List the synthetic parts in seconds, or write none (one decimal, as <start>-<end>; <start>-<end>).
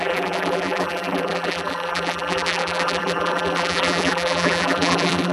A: 0.0-5.3